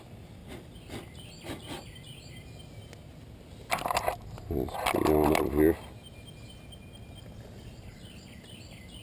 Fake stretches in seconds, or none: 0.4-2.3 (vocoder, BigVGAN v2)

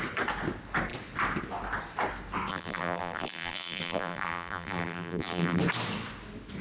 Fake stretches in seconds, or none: 2.5-5.6 (vocoder, BigVGAN v2)

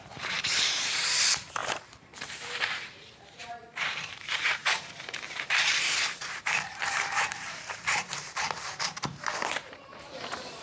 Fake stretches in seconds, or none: 0.0-10.6 (vocoder, BigVGAN v2)

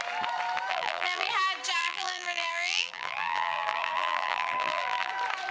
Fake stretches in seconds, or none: 0.7-1.3 (vocoder, BigVGAN v2); 1.8-5.1

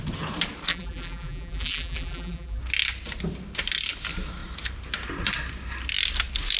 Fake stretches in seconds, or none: 0.7-2.6 (vocoder, BigVGAN v2)

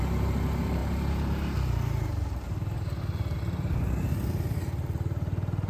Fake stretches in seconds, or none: none

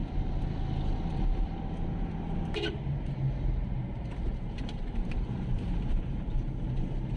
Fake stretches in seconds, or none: 1.2-7.2 (vocoder, BigVGAN v2)